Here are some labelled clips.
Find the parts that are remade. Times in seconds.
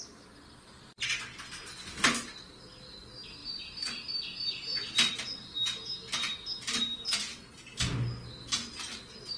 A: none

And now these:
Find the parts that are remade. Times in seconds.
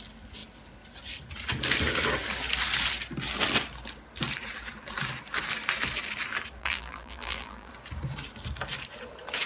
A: 6.6-7.7 (vocoder, BigVGAN v2)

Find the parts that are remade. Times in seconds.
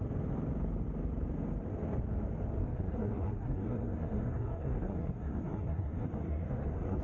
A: 2.6-7.0 (codec, SNAC)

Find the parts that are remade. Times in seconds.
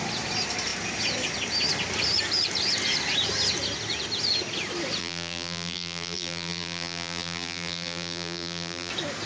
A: 5.0-8.9 (vocoder, BigVGAN v2)